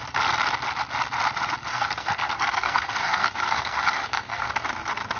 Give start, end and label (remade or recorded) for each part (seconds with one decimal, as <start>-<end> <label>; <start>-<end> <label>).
0.0-1.7 recorded; 1.7-4.5 remade; 4.5-5.2 recorded